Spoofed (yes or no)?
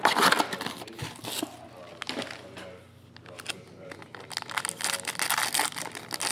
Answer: no